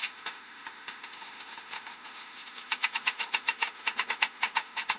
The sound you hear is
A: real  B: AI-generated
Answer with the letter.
B